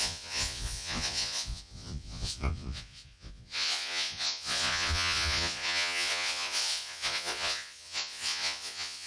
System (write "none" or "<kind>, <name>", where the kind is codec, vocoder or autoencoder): vocoder, Vocos